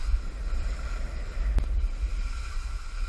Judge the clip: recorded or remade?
recorded